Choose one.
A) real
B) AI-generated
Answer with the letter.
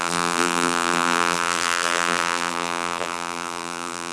B